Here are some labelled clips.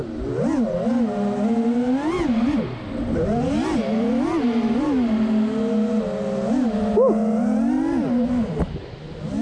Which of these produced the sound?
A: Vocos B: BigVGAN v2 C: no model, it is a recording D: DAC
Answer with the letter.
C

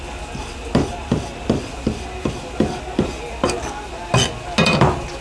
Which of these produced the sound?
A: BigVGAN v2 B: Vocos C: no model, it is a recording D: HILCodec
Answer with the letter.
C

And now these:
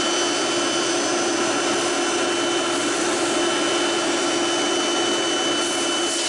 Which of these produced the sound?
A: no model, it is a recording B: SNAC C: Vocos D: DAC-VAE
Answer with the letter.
A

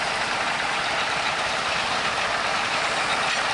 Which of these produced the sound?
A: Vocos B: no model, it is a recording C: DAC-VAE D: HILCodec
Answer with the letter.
B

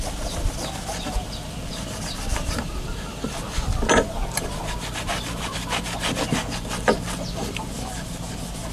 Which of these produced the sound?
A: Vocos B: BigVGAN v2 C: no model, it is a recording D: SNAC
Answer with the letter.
B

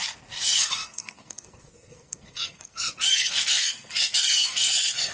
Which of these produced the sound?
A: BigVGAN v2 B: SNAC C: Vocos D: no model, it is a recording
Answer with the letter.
B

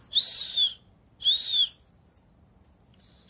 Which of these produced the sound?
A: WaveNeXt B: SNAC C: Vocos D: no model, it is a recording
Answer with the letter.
D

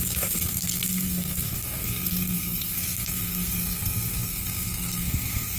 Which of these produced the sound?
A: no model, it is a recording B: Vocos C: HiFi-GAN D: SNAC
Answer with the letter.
D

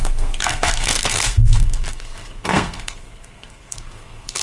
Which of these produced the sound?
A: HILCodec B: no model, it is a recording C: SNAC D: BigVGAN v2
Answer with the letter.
C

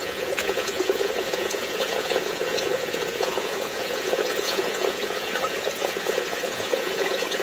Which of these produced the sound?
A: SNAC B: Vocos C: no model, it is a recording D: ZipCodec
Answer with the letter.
B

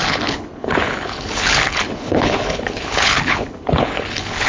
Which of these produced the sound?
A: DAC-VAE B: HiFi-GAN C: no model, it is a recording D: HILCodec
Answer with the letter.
D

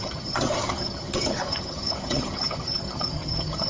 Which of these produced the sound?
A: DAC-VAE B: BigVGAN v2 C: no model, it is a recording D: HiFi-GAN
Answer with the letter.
D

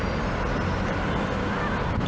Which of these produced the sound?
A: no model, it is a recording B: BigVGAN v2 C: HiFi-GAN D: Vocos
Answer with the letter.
A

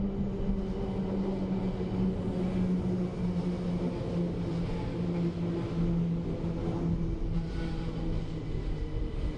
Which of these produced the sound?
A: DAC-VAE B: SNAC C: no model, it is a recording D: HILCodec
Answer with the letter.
C